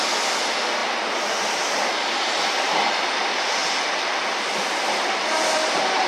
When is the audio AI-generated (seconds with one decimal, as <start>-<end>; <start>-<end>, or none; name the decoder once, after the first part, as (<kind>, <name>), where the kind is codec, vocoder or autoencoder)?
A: 3.6-4.6 (vocoder, BigVGAN v2)

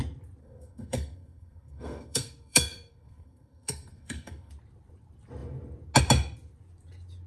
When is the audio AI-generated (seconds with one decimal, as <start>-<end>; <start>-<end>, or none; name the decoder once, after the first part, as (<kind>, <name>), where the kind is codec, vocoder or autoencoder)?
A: 0.4-4.5 (codec, SNAC)

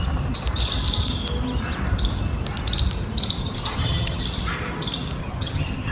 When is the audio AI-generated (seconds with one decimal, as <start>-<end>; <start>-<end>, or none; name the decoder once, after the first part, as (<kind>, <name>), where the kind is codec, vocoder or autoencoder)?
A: 3.4-4.2 (vocoder, HiFi-GAN); 5.2-5.9

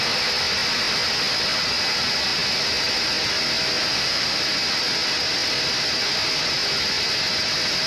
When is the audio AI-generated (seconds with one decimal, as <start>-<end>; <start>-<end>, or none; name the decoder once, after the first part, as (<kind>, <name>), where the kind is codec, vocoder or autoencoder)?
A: 3.9-4.4 (autoencoder, DAC-VAE)

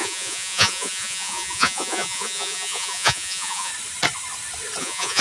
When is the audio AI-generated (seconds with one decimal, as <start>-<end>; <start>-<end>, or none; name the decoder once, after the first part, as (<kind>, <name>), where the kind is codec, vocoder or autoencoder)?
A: 0.0-3.7 (vocoder, Vocos); 4.8-5.2

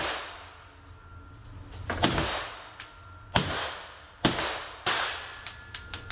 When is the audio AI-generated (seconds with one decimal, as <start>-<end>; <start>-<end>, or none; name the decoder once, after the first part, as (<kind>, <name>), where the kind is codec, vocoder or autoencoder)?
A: none

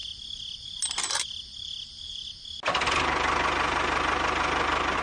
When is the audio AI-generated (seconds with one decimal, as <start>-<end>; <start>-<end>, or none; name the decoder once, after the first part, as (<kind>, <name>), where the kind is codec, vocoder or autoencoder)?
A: none

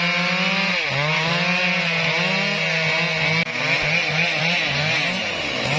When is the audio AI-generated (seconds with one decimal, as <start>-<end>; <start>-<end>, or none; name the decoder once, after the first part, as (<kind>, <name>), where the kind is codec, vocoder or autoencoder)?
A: none